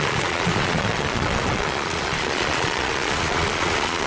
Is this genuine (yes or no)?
no